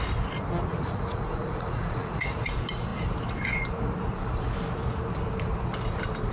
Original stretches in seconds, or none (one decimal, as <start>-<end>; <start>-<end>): 0.0-0.7; 2.5-6.3